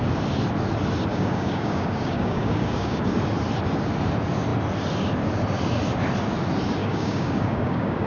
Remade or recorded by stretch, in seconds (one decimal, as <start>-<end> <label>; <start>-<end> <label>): 0.0-1.1 recorded; 1.1-3.1 remade; 3.1-6.8 recorded; 6.8-8.1 remade